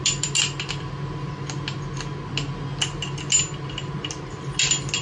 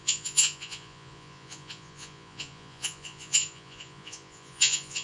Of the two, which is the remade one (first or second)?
second